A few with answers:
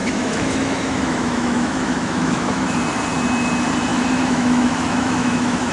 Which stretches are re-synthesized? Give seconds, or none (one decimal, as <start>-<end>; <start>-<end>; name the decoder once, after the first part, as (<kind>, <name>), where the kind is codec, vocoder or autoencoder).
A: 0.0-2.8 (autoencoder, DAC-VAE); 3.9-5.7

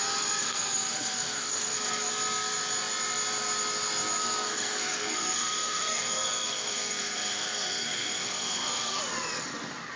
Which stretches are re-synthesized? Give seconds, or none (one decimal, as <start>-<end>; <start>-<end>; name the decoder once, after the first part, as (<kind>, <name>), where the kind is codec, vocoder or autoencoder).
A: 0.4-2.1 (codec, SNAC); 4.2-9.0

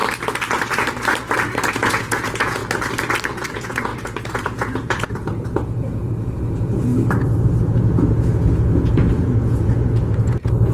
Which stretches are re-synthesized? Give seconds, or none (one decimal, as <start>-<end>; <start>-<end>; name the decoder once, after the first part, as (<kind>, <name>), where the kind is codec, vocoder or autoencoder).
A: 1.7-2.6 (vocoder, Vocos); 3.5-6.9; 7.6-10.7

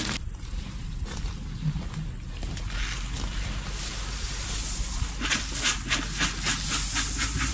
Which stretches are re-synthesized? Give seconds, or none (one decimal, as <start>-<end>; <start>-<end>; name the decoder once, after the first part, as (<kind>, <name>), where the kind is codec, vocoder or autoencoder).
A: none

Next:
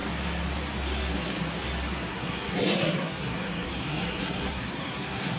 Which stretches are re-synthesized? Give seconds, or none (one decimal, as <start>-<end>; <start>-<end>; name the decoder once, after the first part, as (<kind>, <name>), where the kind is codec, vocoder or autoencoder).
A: 2.1-5.4 (codec, SNAC)

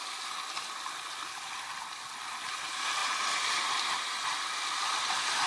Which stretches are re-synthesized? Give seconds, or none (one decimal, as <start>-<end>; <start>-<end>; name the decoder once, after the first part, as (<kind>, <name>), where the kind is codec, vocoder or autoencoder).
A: none